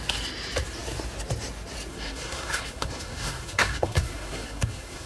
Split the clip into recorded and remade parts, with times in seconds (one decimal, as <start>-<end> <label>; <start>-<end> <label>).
0.0-1.9 recorded; 1.9-5.1 remade

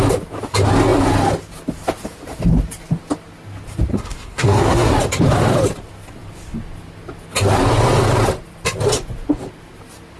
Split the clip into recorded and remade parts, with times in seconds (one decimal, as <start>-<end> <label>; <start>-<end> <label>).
0.0-3.9 recorded; 3.9-4.9 remade; 4.9-10.2 recorded